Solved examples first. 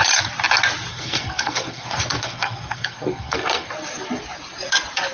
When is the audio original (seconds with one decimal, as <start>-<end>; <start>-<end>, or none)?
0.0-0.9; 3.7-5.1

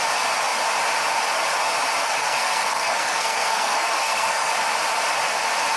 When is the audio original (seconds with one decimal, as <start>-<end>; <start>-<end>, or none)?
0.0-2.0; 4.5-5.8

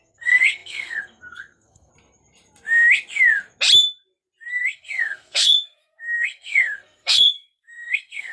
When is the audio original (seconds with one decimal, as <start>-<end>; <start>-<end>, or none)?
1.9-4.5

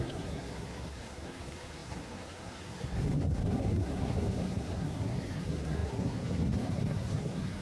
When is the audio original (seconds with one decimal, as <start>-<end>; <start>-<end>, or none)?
none

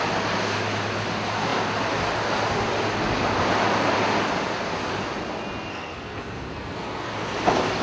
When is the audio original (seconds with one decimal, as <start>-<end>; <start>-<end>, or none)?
0.0-5.7; 7.1-7.8

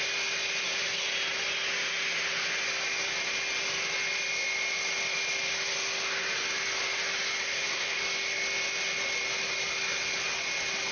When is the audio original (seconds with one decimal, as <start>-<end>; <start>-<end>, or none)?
0.0-7.4; 8.0-10.9

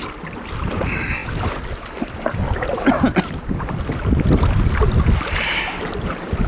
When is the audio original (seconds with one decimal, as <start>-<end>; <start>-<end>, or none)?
0.0-6.5